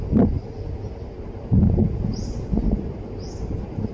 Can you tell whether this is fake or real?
real